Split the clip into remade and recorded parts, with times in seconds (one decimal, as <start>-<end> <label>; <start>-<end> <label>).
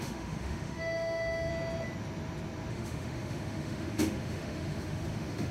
0.0-1.5 remade; 1.5-2.7 recorded; 2.7-5.5 remade